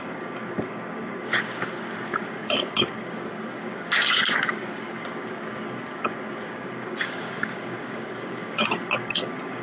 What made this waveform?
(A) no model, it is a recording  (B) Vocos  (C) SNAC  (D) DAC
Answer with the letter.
D